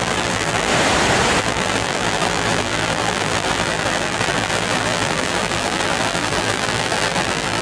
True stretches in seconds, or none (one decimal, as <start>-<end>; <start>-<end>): 0.7-1.4